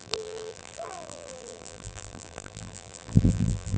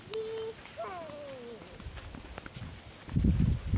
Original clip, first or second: second